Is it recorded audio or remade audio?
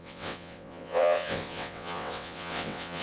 remade